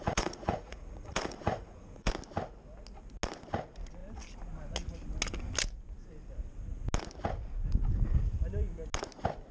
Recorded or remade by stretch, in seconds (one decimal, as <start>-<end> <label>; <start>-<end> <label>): 0.0-2.1 remade; 2.1-9.5 recorded